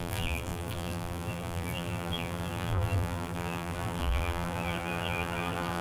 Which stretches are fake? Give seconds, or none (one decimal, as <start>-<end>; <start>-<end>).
0.0-5.8